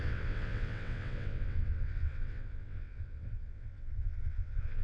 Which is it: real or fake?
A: fake